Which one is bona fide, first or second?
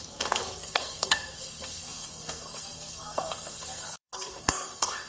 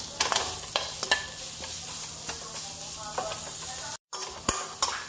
second